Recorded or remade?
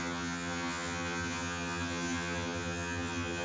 remade